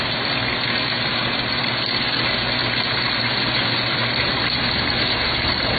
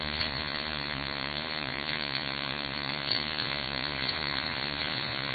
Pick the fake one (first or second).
second